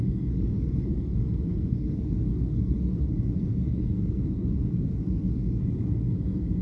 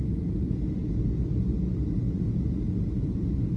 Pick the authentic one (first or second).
second